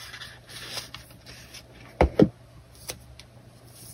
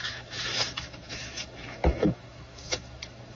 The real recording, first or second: first